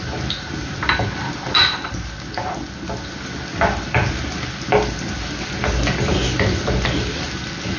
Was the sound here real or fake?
real